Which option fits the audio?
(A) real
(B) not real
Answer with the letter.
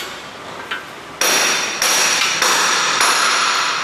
A